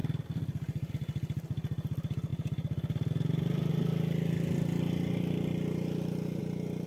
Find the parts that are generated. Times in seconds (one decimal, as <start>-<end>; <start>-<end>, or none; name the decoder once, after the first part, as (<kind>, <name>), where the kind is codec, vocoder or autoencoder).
none